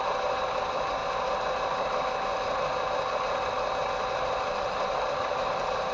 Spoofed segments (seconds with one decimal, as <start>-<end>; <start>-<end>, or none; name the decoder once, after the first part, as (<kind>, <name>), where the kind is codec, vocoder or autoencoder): 0.0-1.0 (vocoder, BigVGAN v2); 4.5-5.9